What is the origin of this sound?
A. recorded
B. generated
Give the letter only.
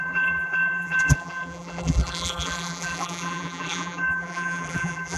B